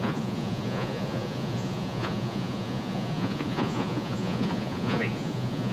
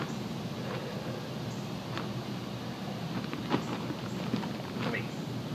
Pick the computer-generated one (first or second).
first